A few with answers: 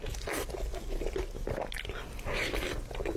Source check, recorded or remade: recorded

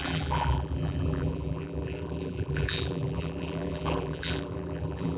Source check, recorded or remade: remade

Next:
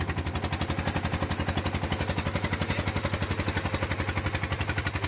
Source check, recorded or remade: recorded